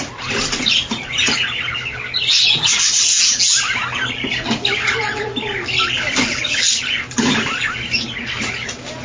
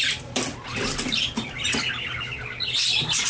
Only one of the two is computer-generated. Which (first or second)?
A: second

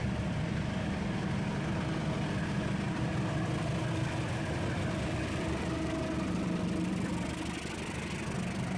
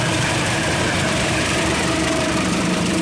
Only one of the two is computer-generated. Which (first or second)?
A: second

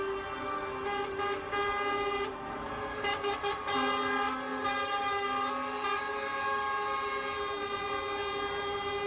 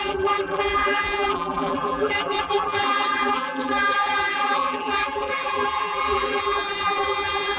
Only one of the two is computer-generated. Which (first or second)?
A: second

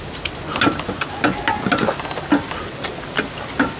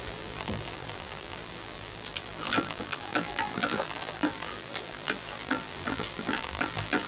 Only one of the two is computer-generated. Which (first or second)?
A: second